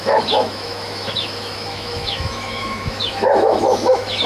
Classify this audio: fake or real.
fake